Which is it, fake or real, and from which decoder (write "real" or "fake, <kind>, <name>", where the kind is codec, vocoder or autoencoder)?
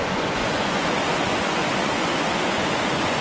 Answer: fake, vocoder, Vocos